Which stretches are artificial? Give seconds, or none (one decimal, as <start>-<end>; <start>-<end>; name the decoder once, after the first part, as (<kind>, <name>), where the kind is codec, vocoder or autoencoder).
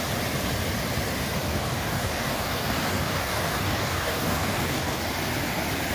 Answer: 1.5-5.0 (codec, DAC)